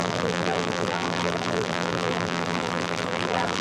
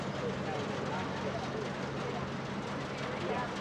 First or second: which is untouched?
second